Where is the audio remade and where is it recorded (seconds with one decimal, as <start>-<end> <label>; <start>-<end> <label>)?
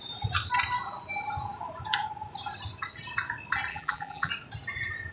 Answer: 0.0-3.7 recorded; 3.7-4.3 remade; 4.3-5.1 recorded